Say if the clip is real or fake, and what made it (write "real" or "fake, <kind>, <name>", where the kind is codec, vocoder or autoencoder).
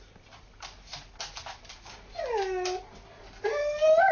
real